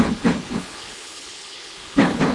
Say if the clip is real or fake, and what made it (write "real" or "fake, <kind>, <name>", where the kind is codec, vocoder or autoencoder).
fake, codec, HILCodec